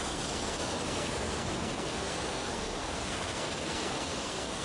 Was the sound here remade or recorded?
remade